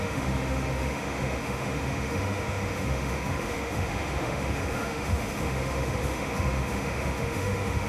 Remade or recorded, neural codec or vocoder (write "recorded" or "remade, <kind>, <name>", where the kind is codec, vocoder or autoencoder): remade, autoencoder, DAC-VAE